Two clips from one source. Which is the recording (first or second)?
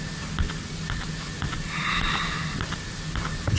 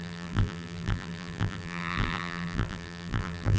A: first